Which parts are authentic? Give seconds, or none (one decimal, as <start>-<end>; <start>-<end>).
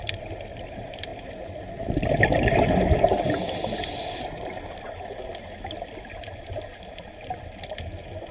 0.0-8.3